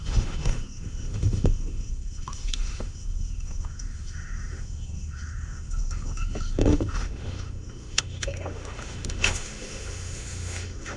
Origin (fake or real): fake